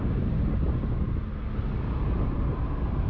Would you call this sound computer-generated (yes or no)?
no